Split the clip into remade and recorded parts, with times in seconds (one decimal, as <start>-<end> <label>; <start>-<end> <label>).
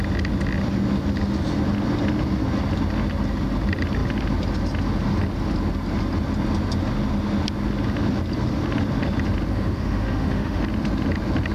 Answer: 0.0-9.5 recorded; 9.5-10.6 remade; 10.6-11.5 recorded